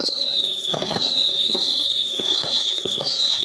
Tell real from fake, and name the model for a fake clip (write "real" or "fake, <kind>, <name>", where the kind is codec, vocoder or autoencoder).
fake, codec, SNAC